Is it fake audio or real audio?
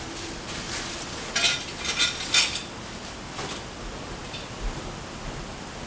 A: real